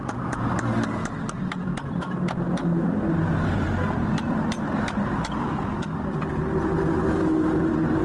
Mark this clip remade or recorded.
recorded